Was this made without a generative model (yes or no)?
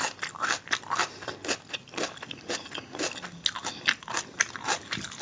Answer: yes